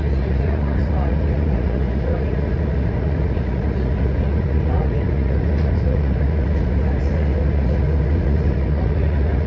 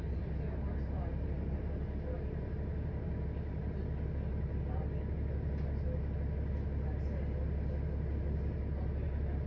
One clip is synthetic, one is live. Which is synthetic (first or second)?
first